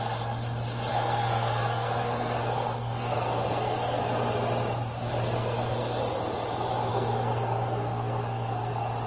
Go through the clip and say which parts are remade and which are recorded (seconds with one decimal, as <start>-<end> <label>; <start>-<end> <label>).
0.0-0.9 recorded; 0.9-4.0 remade; 4.0-5.4 recorded; 5.4-6.0 remade; 6.0-6.9 recorded; 6.9-8.7 remade; 8.7-9.1 recorded